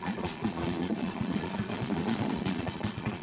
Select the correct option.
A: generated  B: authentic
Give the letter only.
A